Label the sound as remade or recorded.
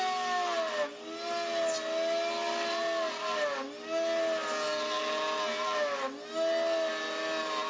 recorded